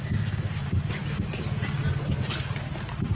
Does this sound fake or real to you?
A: real